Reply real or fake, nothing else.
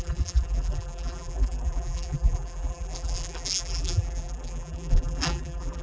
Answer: fake